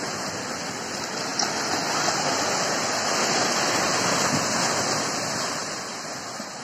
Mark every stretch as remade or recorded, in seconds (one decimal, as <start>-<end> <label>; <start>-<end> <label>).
0.0-5.6 recorded; 5.6-6.1 remade; 6.1-6.6 recorded